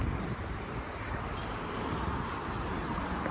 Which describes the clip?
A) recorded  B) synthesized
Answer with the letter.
A